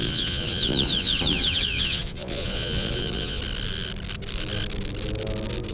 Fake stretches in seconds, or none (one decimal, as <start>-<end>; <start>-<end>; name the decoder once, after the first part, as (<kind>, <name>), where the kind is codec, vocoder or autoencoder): 0.0-3.4 (vocoder, Vocos)